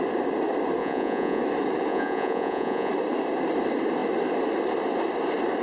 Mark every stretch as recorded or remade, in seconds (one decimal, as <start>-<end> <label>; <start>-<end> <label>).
0.0-0.8 recorded; 0.8-1.4 remade; 1.4-1.9 recorded; 1.9-2.9 remade; 2.9-5.6 recorded

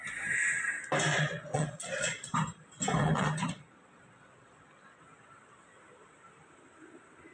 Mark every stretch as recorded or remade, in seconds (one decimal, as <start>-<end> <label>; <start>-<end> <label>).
0.0-1.1 recorded; 1.1-2.3 remade; 2.3-3.0 recorded; 3.0-5.0 remade; 5.0-7.3 recorded

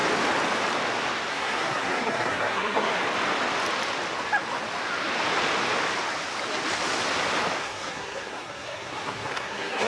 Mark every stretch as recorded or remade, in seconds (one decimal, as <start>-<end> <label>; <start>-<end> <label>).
0.0-1.3 recorded; 1.3-2.9 remade; 2.9-7.6 recorded; 7.6-9.9 remade

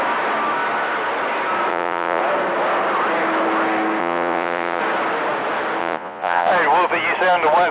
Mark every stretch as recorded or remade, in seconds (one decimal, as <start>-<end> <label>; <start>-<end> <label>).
0.0-1.7 recorded; 1.7-2.2 remade; 2.2-4.0 recorded; 4.0-4.8 remade; 4.8-5.8 recorded; 5.8-6.5 remade; 6.5-7.7 recorded